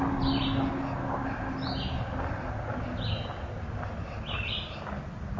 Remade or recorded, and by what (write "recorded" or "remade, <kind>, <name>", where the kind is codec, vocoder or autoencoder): recorded